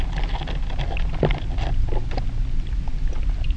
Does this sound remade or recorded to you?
recorded